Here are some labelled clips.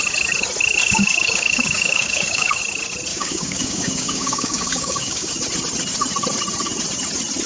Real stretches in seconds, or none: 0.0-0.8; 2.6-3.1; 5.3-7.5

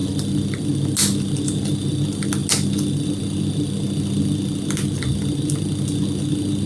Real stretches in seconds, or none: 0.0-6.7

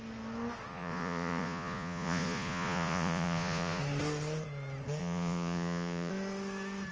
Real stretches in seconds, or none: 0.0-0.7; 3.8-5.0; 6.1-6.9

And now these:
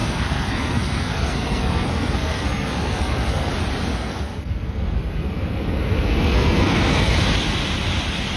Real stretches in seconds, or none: 3.5-3.9; 7.2-8.4

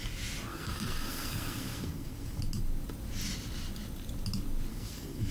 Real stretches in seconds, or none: 0.0-0.5; 2.4-4.7